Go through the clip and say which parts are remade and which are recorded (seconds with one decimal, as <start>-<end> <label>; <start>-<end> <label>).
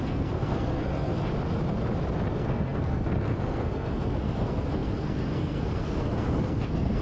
0.0-1.1 remade; 1.1-2.3 recorded; 2.3-7.0 remade